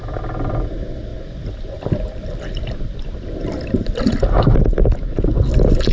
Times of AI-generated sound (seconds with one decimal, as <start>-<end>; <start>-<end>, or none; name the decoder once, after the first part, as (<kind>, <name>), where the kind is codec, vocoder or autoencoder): 1.1-4.6 (vocoder, BigVGAN v2)